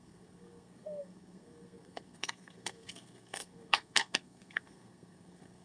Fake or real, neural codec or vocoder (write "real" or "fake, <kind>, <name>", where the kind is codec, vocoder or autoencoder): fake, codec, SNAC